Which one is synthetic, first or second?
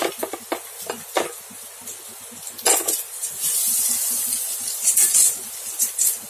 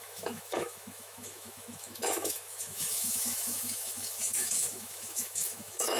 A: second